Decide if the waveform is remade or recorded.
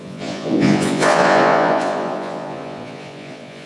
remade